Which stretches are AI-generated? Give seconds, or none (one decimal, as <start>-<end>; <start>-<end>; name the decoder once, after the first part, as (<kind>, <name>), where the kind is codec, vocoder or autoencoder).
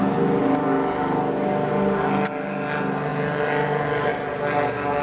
none